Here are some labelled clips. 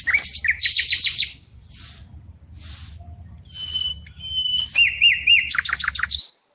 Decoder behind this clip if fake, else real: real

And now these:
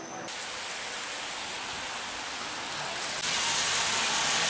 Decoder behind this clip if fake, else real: real